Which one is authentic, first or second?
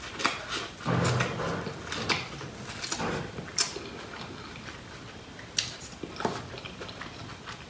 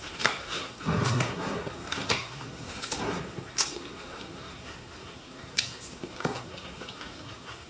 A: first